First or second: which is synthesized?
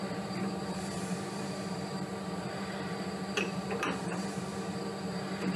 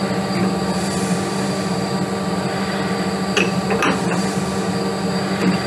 first